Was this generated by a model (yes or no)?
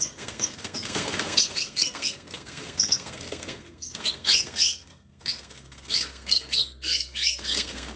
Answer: yes